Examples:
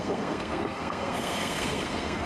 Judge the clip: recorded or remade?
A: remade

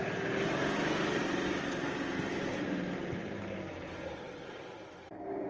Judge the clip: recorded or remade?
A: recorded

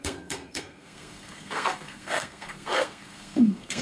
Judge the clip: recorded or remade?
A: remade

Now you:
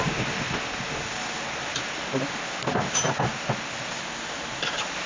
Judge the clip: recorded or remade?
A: recorded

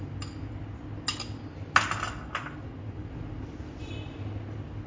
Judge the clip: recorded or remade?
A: recorded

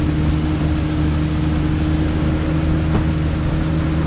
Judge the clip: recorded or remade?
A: recorded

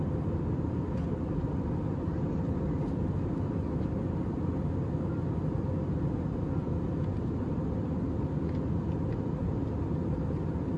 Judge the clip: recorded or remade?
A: recorded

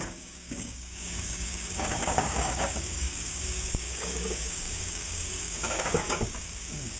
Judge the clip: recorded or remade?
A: remade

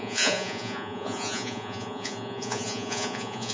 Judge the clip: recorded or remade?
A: remade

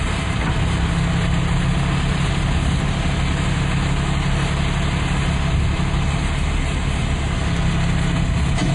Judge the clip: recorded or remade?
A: recorded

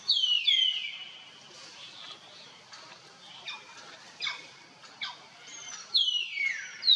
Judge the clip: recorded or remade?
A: remade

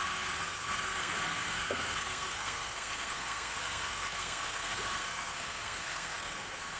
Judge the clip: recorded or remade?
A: remade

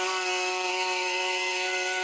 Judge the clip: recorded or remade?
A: remade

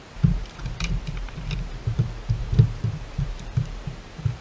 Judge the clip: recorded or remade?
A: remade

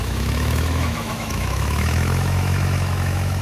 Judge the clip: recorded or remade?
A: remade